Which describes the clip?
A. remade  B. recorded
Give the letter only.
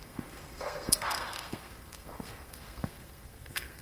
A